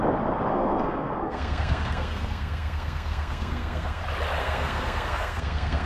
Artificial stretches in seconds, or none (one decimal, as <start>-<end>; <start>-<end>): 0.5-4.0; 4.4-5.9